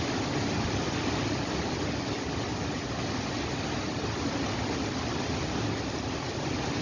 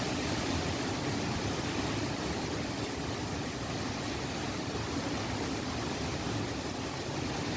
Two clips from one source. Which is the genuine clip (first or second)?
first